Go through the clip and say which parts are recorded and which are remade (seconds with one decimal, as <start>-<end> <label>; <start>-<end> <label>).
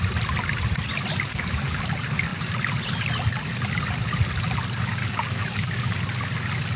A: 0.0-1.3 recorded; 1.3-1.8 remade; 1.8-5.0 recorded; 5.0-6.0 remade; 6.0-6.8 recorded